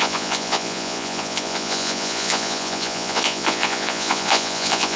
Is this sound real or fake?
fake